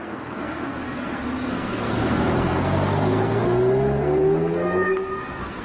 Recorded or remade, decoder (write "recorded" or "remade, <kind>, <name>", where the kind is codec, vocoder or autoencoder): remade, codec, SNAC